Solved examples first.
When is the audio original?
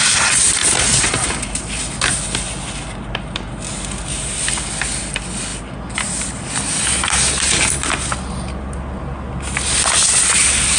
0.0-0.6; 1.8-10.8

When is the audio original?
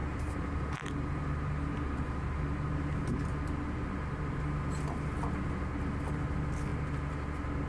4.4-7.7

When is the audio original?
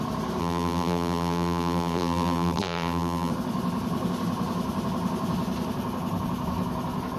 0.0-0.4; 3.3-7.2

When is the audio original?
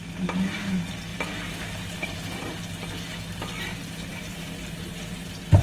0.0-1.1; 2.6-3.7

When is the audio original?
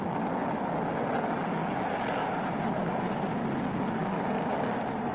0.0-2.2; 3.3-5.1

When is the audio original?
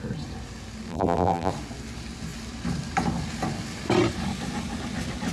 0.0-0.9; 1.5-5.3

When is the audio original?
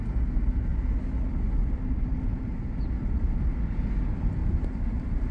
0.0-4.4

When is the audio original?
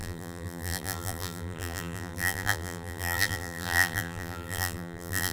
none